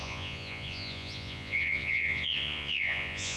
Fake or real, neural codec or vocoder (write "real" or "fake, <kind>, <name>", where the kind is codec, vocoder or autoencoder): fake, vocoder, Vocos